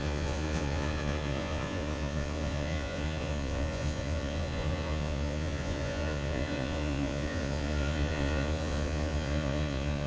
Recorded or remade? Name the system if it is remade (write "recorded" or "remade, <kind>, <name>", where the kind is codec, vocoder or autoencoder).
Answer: remade, vocoder, Vocos